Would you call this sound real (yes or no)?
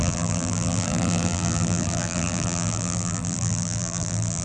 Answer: no